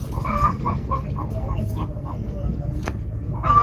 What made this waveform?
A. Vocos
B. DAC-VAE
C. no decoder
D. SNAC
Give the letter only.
D